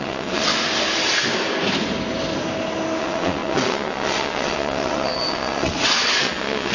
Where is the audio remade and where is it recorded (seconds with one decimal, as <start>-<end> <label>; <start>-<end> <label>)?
0.0-0.5 remade; 0.5-3.0 recorded; 3.0-6.7 remade